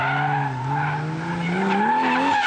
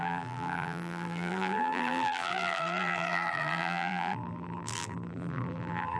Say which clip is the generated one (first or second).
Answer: second